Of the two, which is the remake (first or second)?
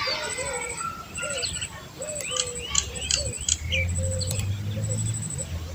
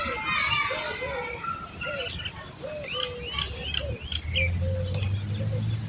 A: first